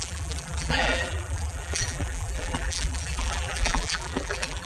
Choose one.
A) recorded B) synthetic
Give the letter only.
B